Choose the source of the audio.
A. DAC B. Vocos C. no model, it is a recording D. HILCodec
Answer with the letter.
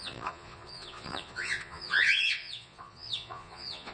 B